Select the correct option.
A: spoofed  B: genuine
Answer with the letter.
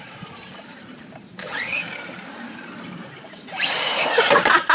A